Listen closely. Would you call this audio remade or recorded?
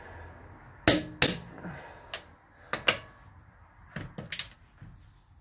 recorded